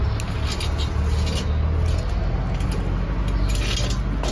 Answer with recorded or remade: recorded